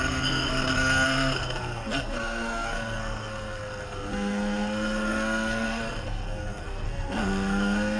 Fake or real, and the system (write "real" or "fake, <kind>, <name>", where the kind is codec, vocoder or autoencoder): fake, codec, SNAC